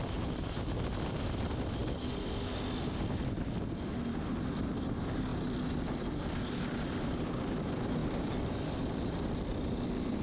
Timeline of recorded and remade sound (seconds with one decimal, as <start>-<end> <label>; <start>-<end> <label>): 0.0-1.8 remade; 1.8-4.4 recorded; 4.4-5.3 remade; 5.3-6.9 recorded; 6.9-10.2 remade